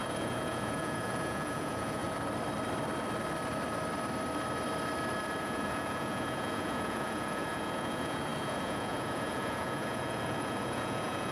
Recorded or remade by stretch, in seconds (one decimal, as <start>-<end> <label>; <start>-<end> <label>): 0.0-2.0 remade; 2.0-5.4 recorded; 5.4-11.3 remade